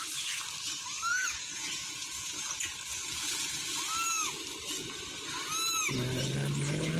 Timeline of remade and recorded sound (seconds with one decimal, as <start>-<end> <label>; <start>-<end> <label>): 0.0-1.1 recorded; 1.1-3.8 remade; 3.8-7.0 recorded